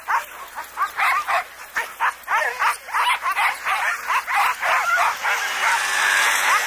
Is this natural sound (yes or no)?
yes